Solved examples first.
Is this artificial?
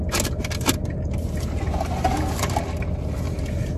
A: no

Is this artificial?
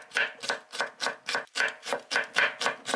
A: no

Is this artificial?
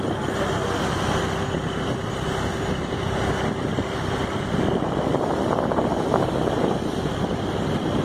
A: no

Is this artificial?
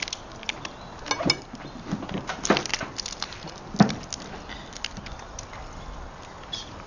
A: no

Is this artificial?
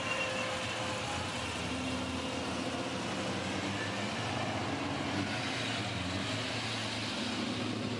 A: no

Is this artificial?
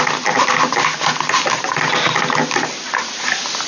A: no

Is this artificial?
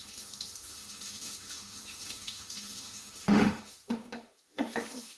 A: yes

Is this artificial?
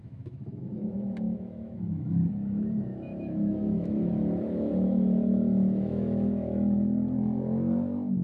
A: yes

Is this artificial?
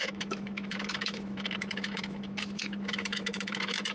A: yes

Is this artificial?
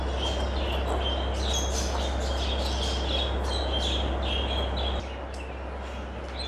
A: no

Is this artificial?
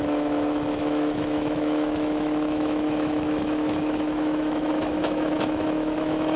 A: yes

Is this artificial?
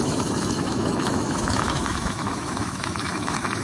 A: yes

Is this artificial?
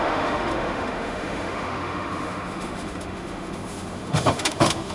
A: yes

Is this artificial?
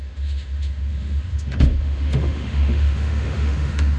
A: yes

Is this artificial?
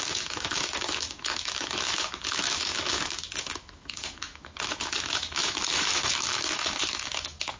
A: yes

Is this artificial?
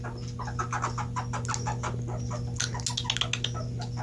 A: no